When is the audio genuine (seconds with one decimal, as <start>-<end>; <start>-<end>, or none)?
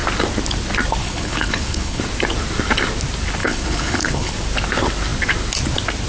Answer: 0.0-1.0; 2.0-3.4; 4.3-6.1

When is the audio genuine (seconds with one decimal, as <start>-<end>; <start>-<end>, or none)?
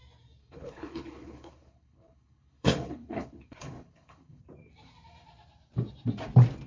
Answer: 0.0-0.4; 4.4-6.7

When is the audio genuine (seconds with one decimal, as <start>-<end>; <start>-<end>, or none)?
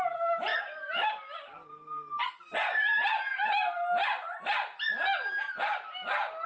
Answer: 0.0-6.5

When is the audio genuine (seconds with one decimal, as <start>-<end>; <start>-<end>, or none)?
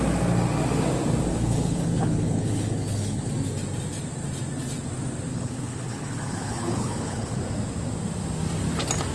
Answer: 0.0-1.3; 3.3-5.3; 7.4-9.1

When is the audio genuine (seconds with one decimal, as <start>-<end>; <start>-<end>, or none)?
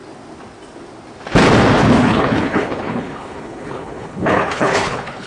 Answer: 0.0-2.0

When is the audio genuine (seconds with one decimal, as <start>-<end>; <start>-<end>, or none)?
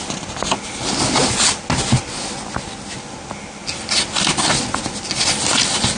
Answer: 0.0-6.0